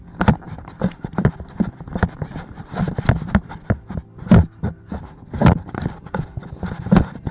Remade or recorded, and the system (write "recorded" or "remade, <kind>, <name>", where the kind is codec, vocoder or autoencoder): recorded